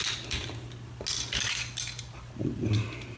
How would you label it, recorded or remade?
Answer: recorded